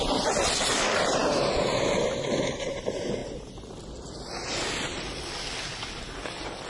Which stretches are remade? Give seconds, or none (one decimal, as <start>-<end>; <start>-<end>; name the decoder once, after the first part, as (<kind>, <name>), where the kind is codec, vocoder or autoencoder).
none